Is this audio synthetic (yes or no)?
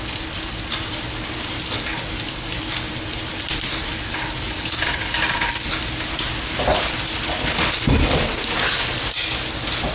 no